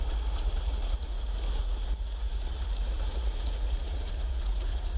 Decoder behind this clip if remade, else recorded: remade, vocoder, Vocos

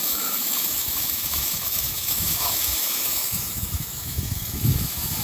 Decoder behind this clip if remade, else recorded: remade, autoencoder, DAC-VAE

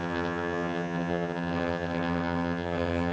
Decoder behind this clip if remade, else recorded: remade, vocoder, HiFi-GAN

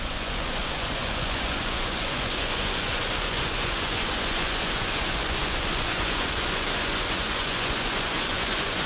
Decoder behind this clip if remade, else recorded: remade, vocoder, Vocos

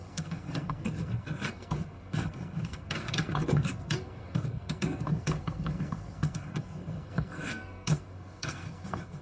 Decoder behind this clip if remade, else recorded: remade, codec, SNAC